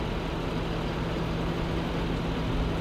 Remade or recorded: recorded